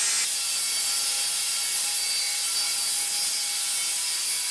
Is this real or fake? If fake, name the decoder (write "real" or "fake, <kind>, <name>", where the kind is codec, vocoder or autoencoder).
real